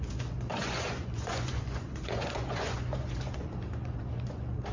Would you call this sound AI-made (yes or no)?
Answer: yes